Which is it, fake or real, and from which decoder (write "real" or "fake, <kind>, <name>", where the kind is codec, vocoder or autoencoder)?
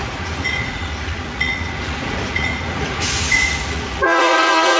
fake, vocoder, Vocos